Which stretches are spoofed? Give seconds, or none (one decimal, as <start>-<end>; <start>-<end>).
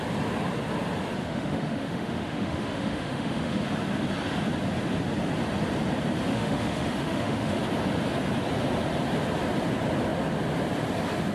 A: 1.2-3.6; 6.3-7.6